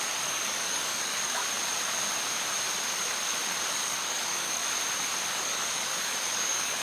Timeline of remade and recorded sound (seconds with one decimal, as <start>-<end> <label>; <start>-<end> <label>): 0.0-1.4 remade; 1.4-3.7 recorded; 3.7-4.6 remade; 4.6-5.3 recorded; 5.3-6.8 remade